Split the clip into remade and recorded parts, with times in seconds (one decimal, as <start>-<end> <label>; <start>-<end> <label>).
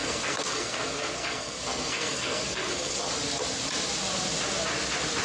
0.0-3.1 remade; 3.1-5.2 recorded